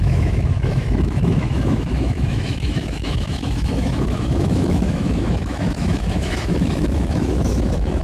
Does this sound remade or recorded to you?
remade